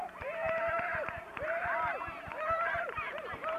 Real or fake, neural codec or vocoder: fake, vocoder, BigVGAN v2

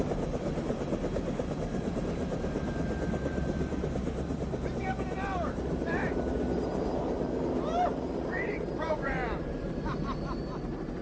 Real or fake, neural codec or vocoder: fake, vocoder, BigVGAN v2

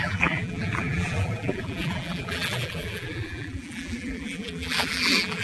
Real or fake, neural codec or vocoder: fake, vocoder, BigVGAN v2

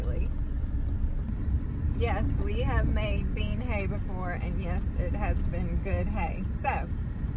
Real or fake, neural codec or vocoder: real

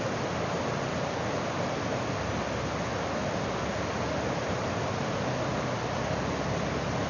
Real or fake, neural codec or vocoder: real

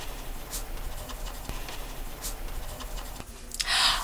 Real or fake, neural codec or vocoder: real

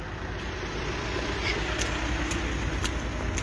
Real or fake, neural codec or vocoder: real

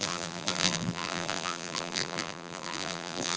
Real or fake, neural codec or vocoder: fake, vocoder, BigVGAN v2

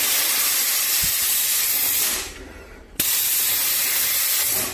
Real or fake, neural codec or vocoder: real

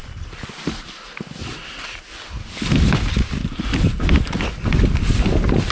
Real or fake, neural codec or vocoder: real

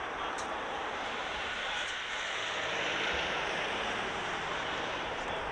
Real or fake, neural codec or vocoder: fake, vocoder, BigVGAN v2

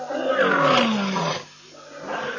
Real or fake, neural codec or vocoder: real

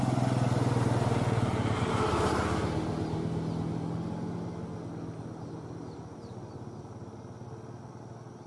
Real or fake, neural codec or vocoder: real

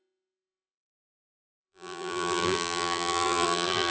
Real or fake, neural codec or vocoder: fake, vocoder, BigVGAN v2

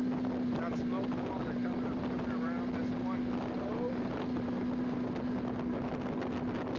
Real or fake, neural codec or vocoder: real